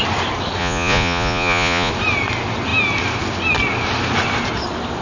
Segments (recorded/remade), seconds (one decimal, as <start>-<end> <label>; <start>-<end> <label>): 0.0-0.6 recorded; 0.6-1.9 remade; 1.9-5.0 recorded